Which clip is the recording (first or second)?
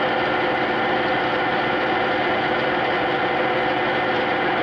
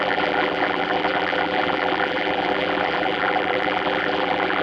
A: first